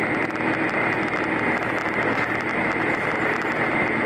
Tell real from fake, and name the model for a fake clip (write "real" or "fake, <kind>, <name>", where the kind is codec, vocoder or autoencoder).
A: real